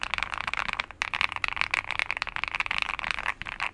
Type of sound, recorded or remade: recorded